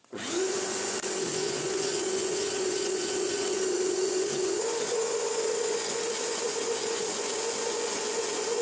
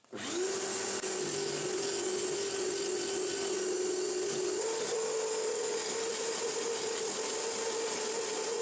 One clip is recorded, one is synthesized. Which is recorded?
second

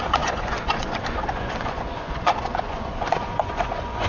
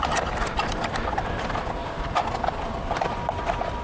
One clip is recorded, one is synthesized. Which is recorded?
second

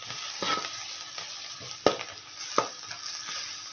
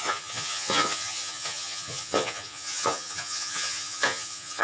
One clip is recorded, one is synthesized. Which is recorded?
first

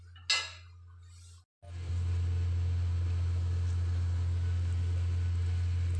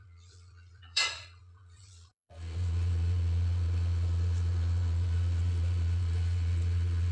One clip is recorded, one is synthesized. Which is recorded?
first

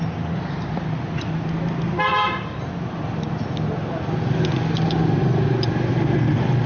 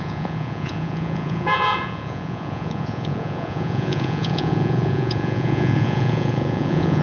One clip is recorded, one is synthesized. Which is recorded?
first